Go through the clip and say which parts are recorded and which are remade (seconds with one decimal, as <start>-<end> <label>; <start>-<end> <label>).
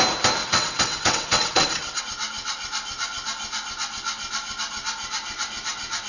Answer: 0.0-0.4 recorded; 0.4-2.0 remade; 2.0-6.1 recorded